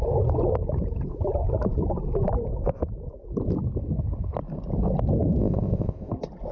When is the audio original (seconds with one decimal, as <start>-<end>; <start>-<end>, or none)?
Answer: 0.0-5.4; 6.1-6.5